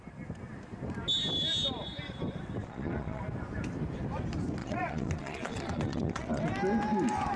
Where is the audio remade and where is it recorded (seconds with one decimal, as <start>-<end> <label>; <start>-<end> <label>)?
0.0-2.6 recorded; 2.6-3.2 remade; 3.2-4.6 recorded; 4.6-6.4 remade; 6.4-7.4 recorded